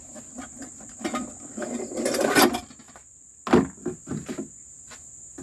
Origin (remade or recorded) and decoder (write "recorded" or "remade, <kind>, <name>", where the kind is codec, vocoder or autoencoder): recorded